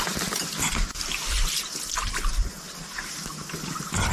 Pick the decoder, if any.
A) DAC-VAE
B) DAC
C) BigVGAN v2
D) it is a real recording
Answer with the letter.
D